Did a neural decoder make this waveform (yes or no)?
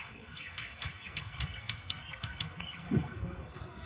yes